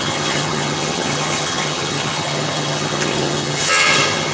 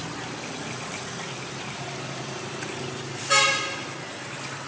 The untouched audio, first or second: second